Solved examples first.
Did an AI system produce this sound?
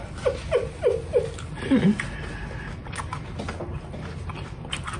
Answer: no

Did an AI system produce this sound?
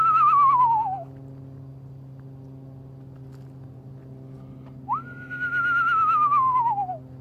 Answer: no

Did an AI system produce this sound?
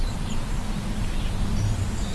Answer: no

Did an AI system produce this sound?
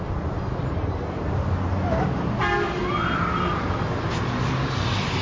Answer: no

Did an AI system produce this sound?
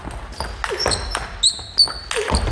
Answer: no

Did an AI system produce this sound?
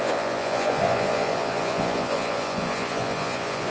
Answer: yes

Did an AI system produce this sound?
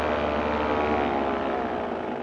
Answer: no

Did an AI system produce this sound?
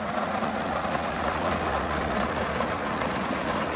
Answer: yes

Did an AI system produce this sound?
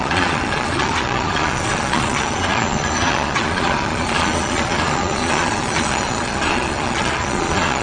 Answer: yes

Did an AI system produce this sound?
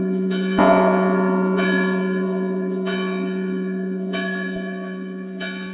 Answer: yes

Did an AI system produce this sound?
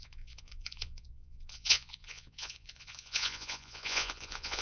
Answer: yes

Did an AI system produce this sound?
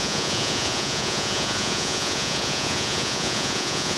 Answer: yes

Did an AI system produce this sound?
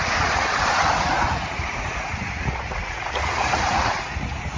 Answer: yes